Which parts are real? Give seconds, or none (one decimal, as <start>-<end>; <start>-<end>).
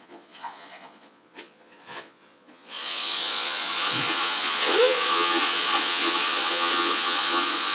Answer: none